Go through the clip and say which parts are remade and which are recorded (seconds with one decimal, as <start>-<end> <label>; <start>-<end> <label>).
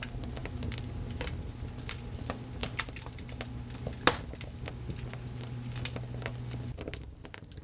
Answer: 0.0-7.6 recorded